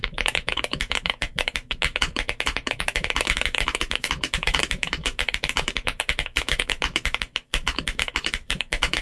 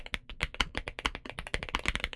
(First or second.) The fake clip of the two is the first